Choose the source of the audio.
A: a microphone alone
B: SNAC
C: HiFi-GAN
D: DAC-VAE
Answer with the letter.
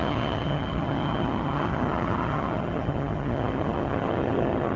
C